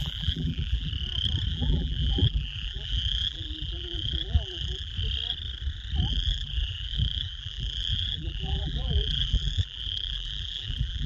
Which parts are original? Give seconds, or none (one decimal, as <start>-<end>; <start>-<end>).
0.9-1.5; 4.9-6.1